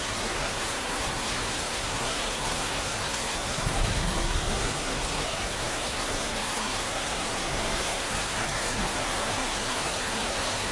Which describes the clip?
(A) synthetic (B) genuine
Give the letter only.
A